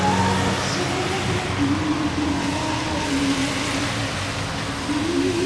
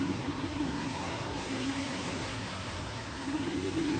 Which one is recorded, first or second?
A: first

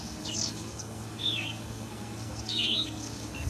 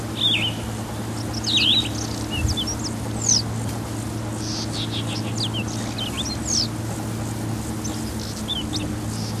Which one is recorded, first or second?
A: second